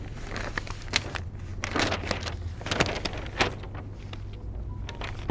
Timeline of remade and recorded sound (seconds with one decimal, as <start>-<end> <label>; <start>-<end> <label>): 0.0-5.3 recorded